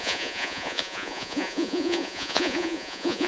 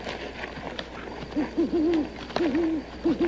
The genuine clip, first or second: second